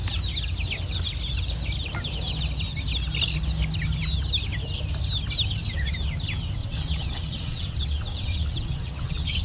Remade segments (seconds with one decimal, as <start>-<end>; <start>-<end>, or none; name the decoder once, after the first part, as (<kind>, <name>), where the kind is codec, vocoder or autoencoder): 6.6-9.4 (vocoder, WaveNeXt)